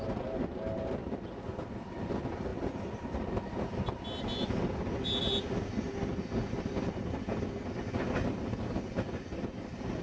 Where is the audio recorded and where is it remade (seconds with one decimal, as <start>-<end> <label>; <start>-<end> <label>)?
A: 0.0-10.0 recorded